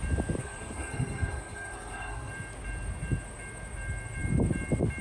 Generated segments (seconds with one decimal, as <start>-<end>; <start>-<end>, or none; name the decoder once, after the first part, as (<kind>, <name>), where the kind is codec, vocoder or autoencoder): 0.4-2.3 (codec, SNAC)